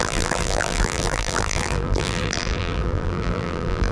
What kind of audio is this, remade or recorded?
remade